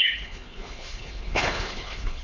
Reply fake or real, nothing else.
fake